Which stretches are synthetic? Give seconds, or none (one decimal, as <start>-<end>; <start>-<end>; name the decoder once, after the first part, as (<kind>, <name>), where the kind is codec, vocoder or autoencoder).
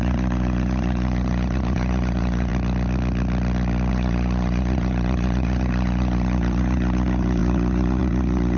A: 0.0-2.5 (vocoder, Vocos); 3.9-8.6